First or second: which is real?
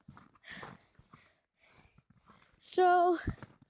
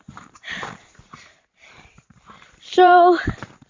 first